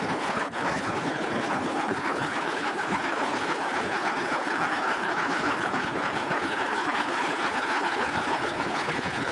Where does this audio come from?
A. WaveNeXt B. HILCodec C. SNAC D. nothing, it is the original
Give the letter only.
B